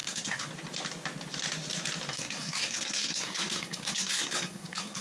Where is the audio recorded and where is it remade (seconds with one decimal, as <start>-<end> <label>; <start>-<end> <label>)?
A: 0.0-0.5 remade; 0.5-2.1 recorded; 2.1-5.0 remade